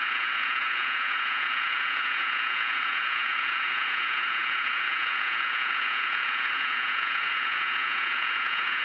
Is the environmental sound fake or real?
fake